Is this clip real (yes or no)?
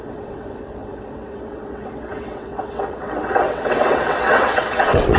no